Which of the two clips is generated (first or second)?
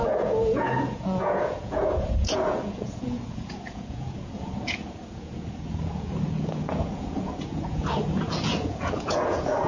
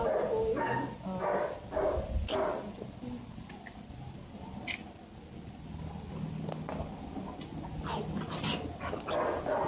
first